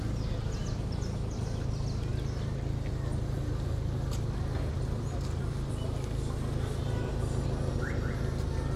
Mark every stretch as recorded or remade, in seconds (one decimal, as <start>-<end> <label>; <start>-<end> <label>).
0.0-8.8 recorded

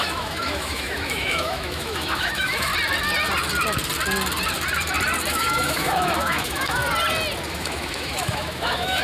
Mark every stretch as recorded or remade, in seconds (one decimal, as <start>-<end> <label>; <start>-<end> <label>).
0.0-2.7 remade; 2.7-5.3 recorded; 5.3-6.8 remade; 6.8-7.5 recorded; 7.5-9.0 remade

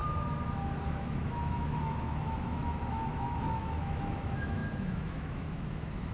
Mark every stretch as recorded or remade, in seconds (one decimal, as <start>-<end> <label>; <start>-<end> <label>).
0.0-0.8 recorded; 0.8-6.1 remade

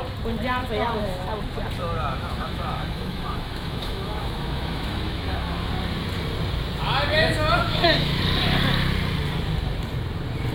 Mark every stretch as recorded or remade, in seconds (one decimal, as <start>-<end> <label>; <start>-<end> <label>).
0.0-0.6 recorded; 0.6-1.4 remade; 1.4-1.8 recorded; 1.8-5.7 remade; 5.7-7.1 recorded; 7.1-8.2 remade; 8.2-10.5 recorded

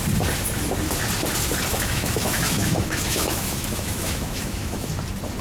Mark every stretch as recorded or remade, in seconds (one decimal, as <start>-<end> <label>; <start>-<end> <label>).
0.0-1.7 recorded; 1.7-4.9 remade; 4.9-5.4 recorded

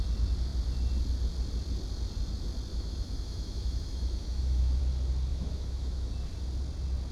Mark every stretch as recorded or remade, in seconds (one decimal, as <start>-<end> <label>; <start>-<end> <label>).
0.0-2.7 recorded; 2.7-4.8 remade; 4.8-5.3 recorded; 5.3-6.1 remade; 6.1-7.1 recorded

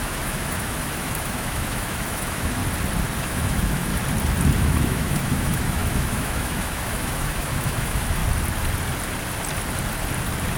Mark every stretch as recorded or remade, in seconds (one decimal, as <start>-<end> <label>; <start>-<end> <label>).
0.0-2.6 remade; 2.6-3.2 recorded; 3.2-3.9 remade; 3.9-4.6 recorded; 4.6-8.2 remade; 8.2-10.6 recorded